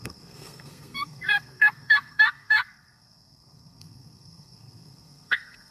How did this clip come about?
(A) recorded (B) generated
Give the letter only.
B